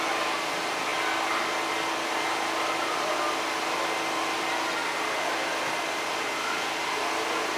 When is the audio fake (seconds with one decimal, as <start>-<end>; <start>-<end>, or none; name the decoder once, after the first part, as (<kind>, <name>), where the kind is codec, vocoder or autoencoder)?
none